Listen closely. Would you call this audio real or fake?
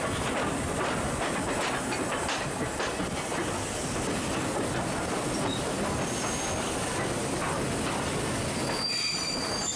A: real